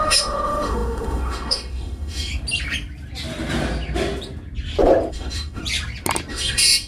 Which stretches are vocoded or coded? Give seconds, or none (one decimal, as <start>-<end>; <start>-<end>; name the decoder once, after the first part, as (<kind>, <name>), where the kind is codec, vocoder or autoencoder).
0.0-2.3 (autoencoder, DAC-VAE); 5.1-5.6; 6.3-6.9